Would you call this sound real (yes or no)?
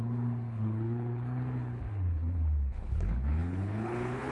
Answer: no